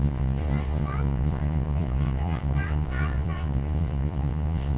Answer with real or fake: fake